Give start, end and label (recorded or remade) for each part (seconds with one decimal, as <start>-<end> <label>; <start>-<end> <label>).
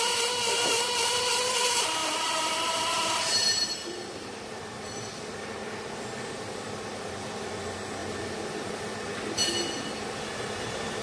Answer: 0.0-2.0 recorded; 2.0-4.6 remade; 4.6-11.0 recorded